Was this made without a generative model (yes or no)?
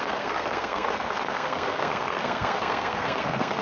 no